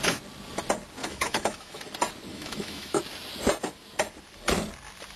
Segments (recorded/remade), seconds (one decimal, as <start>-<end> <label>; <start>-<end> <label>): 0.0-1.0 recorded; 1.0-1.8 remade; 1.8-2.3 recorded; 2.3-3.0 remade; 3.0-5.2 recorded